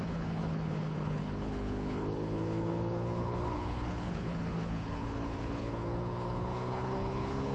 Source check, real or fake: fake